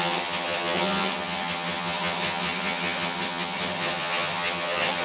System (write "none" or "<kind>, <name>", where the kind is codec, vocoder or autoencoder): vocoder, HiFi-GAN